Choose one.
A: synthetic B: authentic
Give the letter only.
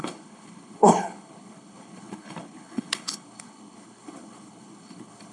A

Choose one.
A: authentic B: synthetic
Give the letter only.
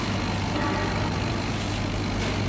A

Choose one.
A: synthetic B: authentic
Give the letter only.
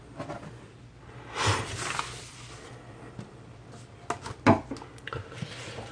B